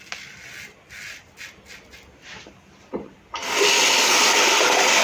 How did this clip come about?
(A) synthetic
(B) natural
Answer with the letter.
B